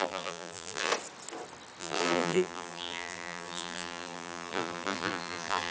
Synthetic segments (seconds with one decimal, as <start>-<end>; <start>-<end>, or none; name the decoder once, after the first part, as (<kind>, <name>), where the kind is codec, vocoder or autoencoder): 0.0-0.9 (vocoder, BigVGAN v2); 1.8-5.7